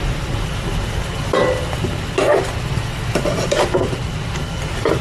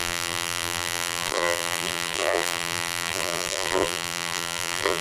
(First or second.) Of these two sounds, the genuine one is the first